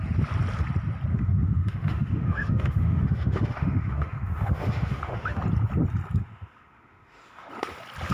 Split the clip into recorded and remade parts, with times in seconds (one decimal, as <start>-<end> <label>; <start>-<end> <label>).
0.0-1.1 recorded; 1.1-5.4 remade; 5.4-6.2 recorded; 6.2-7.5 remade; 7.5-8.1 recorded